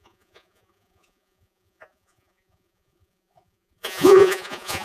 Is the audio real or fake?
fake